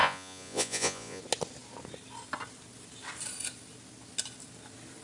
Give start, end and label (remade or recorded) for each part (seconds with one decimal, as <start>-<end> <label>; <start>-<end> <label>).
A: 0.0-1.2 remade; 1.2-5.0 recorded